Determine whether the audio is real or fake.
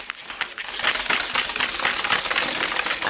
real